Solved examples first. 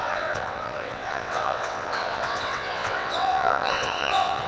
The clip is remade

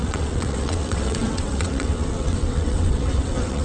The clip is remade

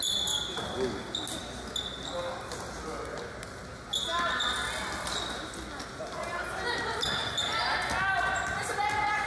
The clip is recorded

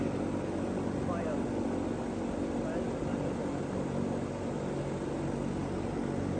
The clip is recorded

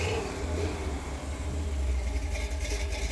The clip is recorded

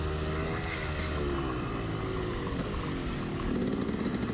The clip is recorded